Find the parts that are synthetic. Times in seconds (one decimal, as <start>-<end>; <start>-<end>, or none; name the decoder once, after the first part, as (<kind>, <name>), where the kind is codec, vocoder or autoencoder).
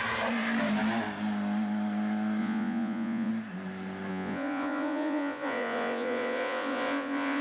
2.4-3.3 (vocoder, Vocos); 4.1-7.4